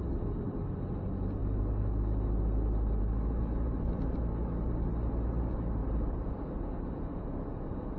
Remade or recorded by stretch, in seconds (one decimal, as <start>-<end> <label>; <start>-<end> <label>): 0.0-5.8 recorded; 5.8-7.3 remade; 7.3-8.0 recorded